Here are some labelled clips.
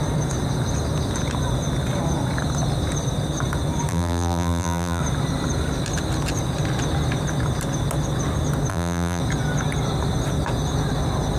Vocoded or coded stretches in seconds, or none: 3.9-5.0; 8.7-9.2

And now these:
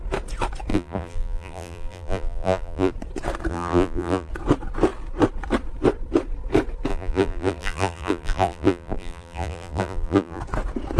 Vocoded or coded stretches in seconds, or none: 0.7-2.9; 3.5-4.3; 6.9-10.4

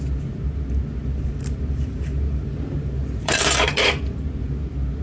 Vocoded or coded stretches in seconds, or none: 1.0-4.0